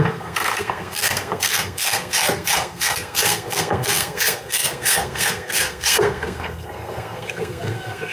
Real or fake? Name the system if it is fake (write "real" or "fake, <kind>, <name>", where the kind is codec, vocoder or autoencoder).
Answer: fake, codec, SNAC